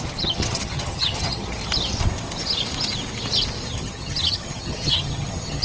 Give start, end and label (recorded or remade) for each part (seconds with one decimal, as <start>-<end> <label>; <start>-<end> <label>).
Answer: 0.0-1.6 remade; 1.6-3.7 recorded; 3.7-5.6 remade